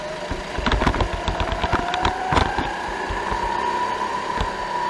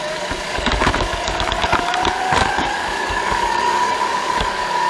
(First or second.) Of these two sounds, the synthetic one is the second